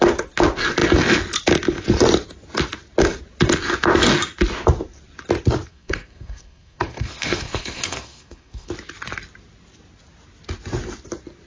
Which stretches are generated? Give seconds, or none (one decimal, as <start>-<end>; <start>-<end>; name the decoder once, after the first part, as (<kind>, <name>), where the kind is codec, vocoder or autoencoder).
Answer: 5.7-8.7 (codec, SNAC)